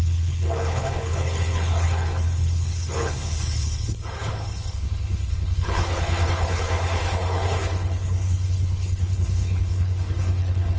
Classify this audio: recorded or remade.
remade